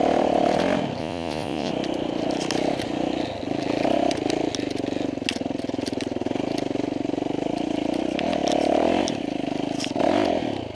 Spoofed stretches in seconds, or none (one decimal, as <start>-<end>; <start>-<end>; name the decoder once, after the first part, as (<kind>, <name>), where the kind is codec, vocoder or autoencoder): 1.0-1.7 (vocoder, Vocos)